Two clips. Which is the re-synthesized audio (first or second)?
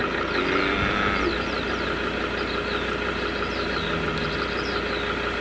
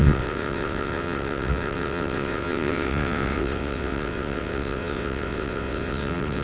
second